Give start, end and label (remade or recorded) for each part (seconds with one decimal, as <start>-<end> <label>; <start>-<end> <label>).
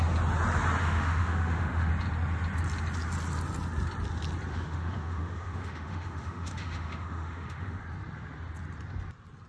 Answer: 0.0-0.8 recorded; 0.8-1.9 remade; 1.9-4.5 recorded; 4.5-7.8 remade; 7.8-9.5 recorded